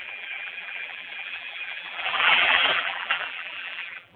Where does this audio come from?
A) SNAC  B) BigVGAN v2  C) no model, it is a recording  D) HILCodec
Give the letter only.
B